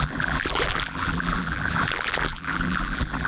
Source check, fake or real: fake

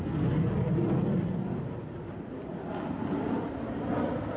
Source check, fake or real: real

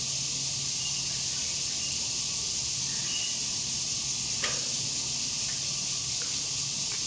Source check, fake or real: real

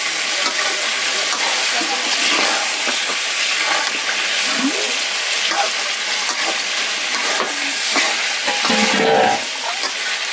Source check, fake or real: real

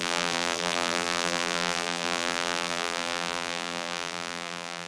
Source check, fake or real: fake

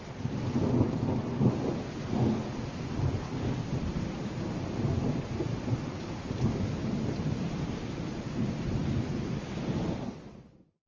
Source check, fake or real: real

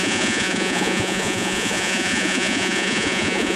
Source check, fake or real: fake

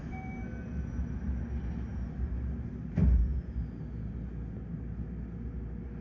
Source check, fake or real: real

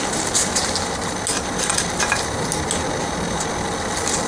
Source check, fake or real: real